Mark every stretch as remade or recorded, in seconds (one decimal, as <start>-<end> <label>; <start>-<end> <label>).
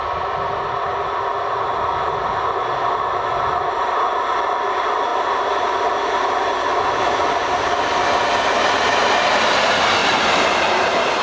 0.0-10.0 recorded; 10.0-11.2 remade